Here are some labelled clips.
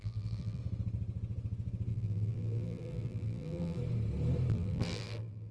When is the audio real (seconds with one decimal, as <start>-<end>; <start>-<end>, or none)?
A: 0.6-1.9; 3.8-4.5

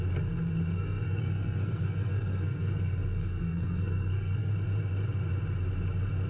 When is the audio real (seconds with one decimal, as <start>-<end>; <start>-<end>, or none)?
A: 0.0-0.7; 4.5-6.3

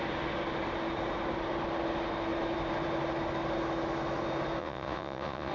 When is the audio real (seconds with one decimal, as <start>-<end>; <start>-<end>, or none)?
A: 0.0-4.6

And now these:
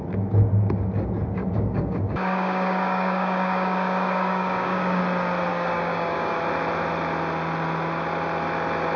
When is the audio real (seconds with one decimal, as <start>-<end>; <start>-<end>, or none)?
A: 0.0-1.4; 5.0-5.5; 6.4-9.0